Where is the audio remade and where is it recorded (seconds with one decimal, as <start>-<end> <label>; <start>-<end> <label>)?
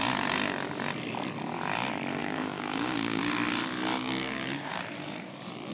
0.0-2.2 recorded; 2.2-3.2 remade; 3.2-4.0 recorded; 4.0-4.8 remade; 4.8-5.7 recorded